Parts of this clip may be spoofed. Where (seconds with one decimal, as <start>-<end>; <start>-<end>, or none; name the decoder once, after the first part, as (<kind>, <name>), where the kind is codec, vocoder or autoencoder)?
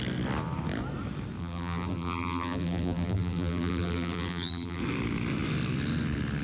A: 1.4-4.8 (vocoder, BigVGAN v2)